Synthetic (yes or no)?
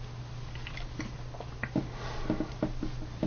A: no